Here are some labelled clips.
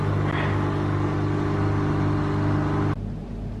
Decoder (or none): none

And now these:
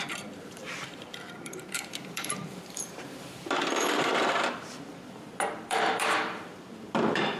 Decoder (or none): vocoder, BigVGAN v2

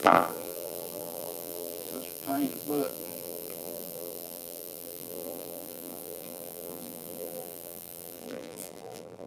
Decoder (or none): vocoder, BigVGAN v2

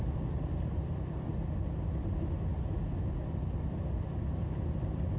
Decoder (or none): none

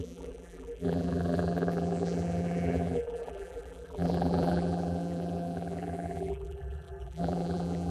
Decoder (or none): vocoder, BigVGAN v2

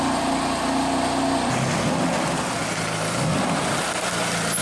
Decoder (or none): none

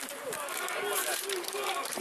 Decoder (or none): vocoder, BigVGAN v2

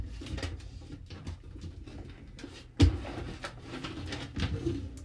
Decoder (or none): none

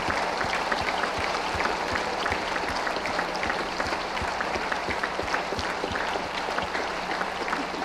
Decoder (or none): vocoder, BigVGAN v2